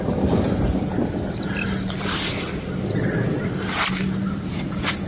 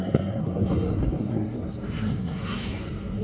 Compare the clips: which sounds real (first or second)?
first